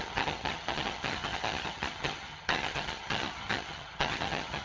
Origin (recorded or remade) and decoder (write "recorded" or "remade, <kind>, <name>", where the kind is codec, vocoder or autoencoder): remade, vocoder, HiFi-GAN